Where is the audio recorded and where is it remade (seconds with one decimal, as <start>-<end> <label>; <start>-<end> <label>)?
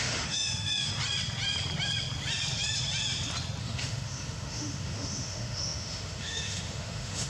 0.0-0.9 remade; 0.9-3.6 recorded; 3.6-7.3 remade